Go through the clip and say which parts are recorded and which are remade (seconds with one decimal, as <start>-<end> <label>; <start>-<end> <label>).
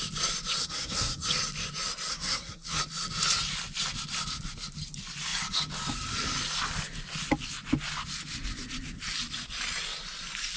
0.0-0.6 recorded; 0.6-1.3 remade; 1.3-2.1 recorded; 2.1-2.8 remade; 2.8-10.6 recorded